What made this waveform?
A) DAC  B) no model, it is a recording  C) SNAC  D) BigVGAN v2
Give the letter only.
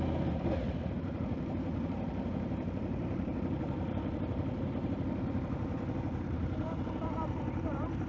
D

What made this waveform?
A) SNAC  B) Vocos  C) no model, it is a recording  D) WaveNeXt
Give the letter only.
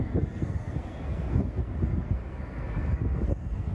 A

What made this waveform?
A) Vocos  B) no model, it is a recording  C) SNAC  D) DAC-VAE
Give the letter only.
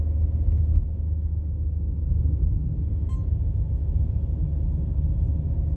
B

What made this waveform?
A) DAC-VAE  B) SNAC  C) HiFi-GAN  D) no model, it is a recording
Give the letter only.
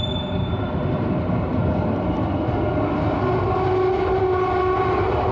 D